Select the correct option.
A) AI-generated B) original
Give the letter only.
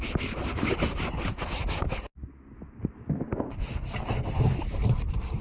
B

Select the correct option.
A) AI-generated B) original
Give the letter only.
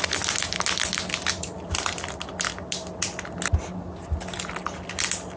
B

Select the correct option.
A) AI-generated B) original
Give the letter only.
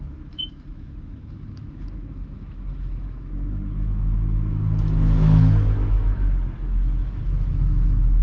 A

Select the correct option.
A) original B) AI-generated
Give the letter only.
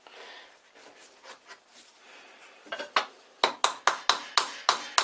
A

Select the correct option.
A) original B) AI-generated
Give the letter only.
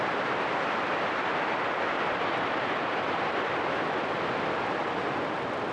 A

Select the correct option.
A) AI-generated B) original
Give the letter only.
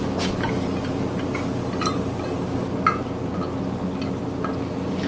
B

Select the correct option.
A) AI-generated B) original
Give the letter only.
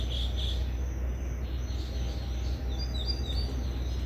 B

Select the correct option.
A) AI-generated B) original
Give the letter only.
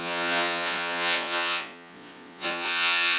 A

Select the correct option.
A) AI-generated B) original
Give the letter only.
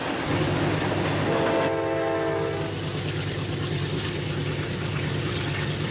B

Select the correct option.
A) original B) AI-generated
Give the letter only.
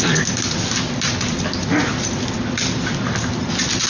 A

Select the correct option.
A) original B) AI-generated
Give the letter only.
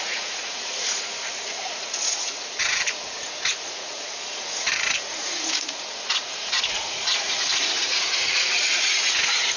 B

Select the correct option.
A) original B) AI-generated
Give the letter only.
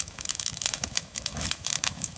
B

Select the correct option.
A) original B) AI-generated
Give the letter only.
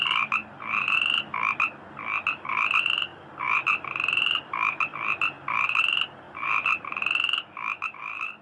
A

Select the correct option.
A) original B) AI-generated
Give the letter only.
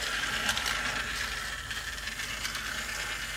A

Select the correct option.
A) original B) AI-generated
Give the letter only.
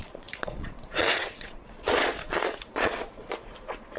B